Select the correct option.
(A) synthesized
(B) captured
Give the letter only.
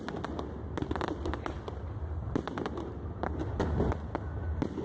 B